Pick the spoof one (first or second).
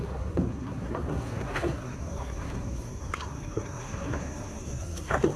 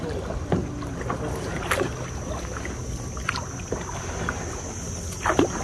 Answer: first